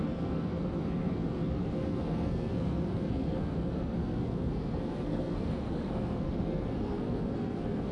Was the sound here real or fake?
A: fake